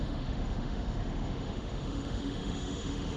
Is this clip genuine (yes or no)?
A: no